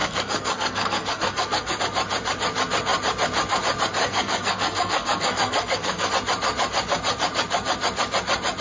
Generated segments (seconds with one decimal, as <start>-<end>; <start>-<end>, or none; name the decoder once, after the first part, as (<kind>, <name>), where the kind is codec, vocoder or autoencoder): 0.0-1.8 (codec, SNAC); 4.0-6.1